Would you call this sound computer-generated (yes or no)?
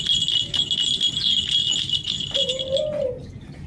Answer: no